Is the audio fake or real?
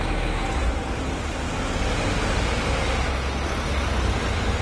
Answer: real